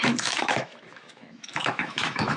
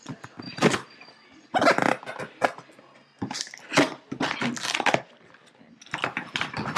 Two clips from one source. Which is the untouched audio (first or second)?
second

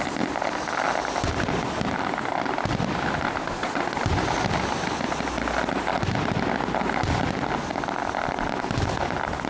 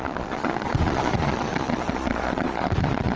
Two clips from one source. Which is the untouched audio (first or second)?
first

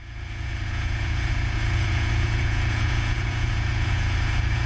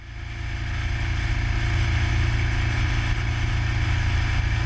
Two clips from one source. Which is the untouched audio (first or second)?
second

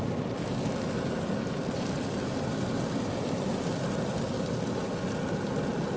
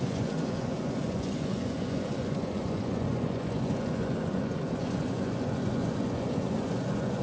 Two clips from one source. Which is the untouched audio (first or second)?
first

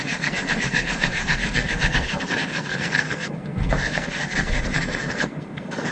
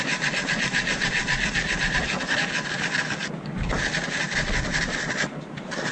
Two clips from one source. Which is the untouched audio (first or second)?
second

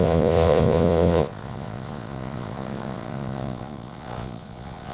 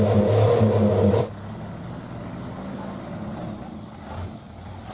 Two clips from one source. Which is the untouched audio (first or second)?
second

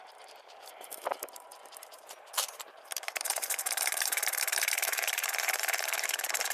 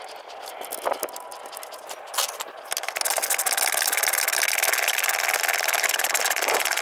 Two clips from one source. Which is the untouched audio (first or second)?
second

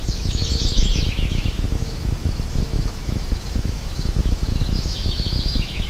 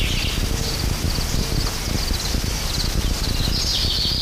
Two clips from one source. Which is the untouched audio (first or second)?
second